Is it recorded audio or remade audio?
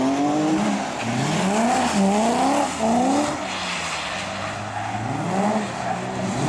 recorded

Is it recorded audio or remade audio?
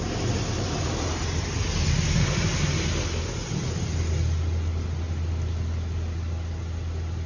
recorded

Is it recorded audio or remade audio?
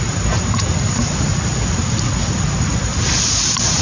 recorded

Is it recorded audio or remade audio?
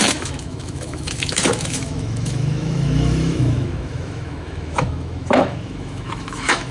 remade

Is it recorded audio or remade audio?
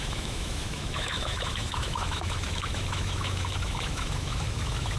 remade